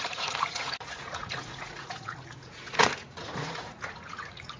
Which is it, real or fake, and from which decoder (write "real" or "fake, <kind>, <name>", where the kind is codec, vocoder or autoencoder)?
fake, vocoder, Vocos